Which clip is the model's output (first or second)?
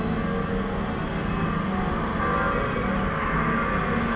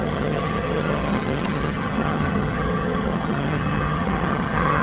second